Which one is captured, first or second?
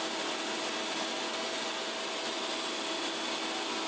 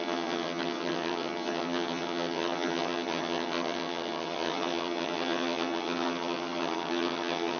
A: first